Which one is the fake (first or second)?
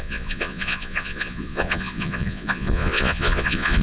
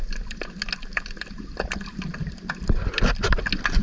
first